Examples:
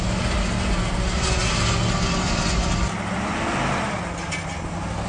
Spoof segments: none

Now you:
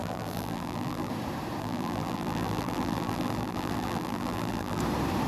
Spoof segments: 0.0-1.1 (vocoder, BigVGAN v2); 1.6-4.8

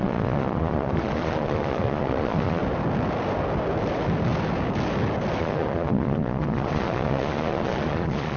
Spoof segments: 0.0-2.6 (vocoder, Vocos); 5.4-8.4

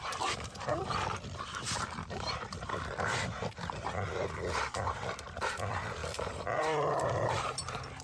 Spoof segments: 0.0-8.0 (vocoder, BigVGAN v2)

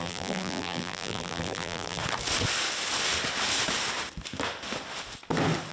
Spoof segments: 0.0-2.0 (vocoder, BigVGAN v2)

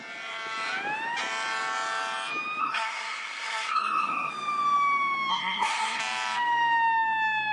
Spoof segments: 2.6-4.3 (codec, SNAC); 5.3-6.0